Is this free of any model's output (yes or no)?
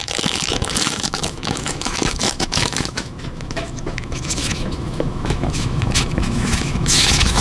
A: no